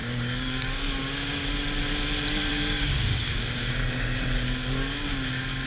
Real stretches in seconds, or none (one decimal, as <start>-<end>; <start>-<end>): 1.0-2.5; 3.4-5.7